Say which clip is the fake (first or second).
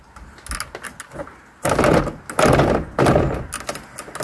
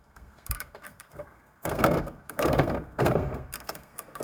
second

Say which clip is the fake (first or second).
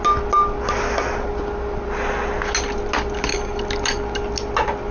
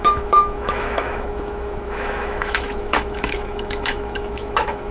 second